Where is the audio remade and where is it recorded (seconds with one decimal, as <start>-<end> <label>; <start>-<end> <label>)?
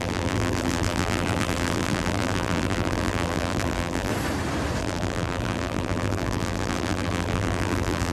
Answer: 0.0-4.1 remade; 4.1-4.8 recorded; 4.8-8.1 remade